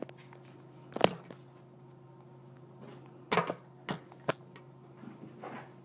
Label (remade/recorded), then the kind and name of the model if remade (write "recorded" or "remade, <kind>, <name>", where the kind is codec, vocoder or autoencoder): recorded